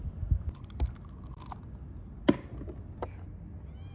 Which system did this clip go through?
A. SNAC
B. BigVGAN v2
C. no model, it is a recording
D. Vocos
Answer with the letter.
C